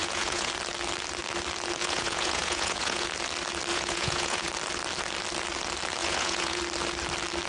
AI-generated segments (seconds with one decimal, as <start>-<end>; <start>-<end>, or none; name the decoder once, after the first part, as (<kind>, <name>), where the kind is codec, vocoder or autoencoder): 0.0-0.5 (vocoder, Vocos); 1.8-3.1; 3.7-4.5; 6.0-6.6

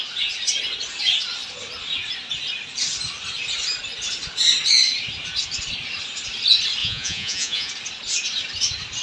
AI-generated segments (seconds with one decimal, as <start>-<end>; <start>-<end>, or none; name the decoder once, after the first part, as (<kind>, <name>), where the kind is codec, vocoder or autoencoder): 6.8-7.7 (vocoder, Vocos)

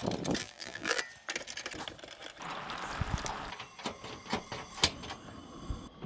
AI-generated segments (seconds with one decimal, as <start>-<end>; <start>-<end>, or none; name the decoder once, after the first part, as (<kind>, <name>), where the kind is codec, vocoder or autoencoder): 0.4-1.0 (vocoder, BigVGAN v2)

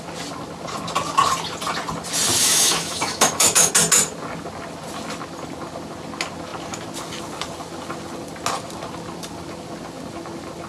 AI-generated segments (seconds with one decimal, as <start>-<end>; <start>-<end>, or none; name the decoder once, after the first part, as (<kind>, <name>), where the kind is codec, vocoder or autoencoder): 2.4-3.7 (autoencoder, DAC-VAE)

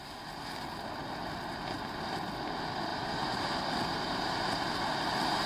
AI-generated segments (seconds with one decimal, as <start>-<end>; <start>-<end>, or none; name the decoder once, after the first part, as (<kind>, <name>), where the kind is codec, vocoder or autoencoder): 2.9-3.7 (vocoder, BigVGAN v2)

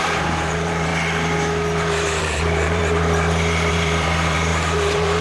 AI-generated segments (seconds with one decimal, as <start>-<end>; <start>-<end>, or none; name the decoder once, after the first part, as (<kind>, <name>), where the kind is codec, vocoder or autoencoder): 0.0-0.9 (vocoder, BigVGAN v2); 2.2-2.8; 3.7-5.2

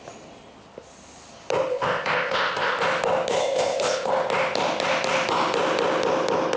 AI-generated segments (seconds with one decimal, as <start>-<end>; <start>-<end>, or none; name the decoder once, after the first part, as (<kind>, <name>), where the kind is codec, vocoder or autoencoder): 1.7-2.8 (codec, ZipCodec); 3.4-4.1